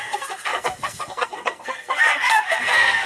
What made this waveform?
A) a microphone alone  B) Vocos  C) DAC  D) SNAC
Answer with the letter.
D